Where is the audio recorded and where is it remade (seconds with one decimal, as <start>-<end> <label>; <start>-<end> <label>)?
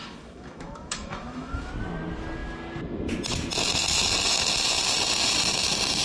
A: 0.0-1.7 remade; 1.7-6.0 recorded